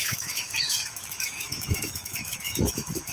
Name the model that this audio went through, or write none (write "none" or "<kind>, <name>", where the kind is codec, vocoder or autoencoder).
autoencoder, DAC-VAE